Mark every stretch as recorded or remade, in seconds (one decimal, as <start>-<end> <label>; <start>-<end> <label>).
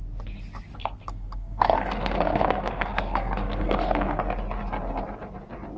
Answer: 0.0-0.7 recorded; 0.7-4.2 remade; 4.2-5.8 recorded